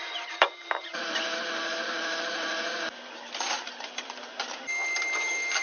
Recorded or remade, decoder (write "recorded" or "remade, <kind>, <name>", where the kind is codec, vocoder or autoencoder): remade, vocoder, BigVGAN v2